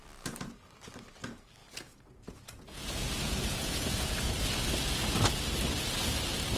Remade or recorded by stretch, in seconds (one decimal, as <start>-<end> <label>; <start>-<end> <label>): 0.0-1.6 recorded; 1.6-4.4 remade; 4.4-6.6 recorded